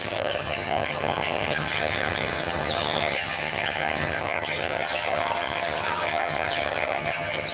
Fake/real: fake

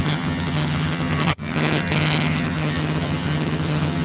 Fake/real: fake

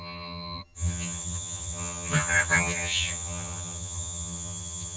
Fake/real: fake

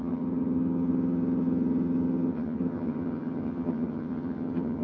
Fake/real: fake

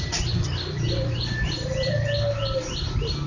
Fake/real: real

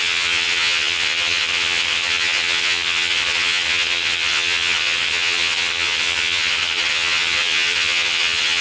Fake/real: fake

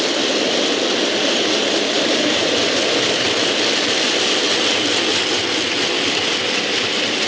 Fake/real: real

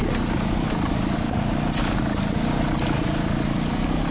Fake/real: real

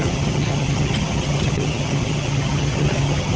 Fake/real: fake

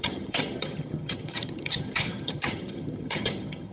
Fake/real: fake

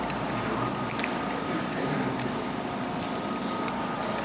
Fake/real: real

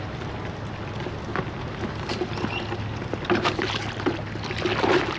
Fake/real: real